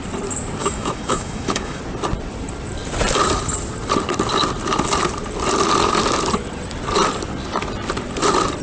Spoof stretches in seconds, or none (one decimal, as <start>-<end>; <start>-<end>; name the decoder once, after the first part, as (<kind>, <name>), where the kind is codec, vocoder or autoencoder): 0.6-1.8 (autoencoder, DAC-VAE)